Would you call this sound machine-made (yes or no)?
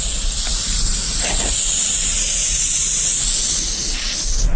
no